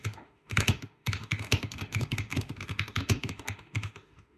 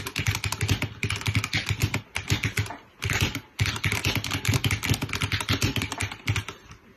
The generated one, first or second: first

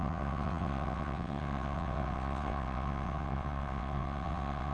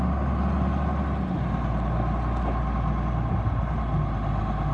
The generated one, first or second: first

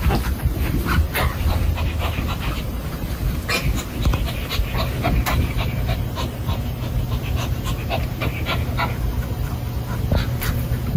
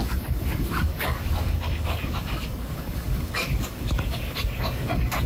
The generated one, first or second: second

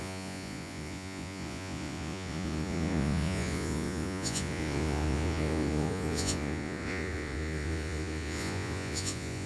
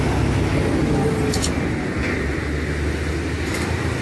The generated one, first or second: first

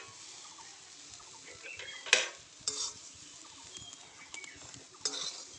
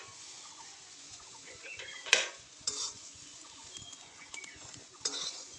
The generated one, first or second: second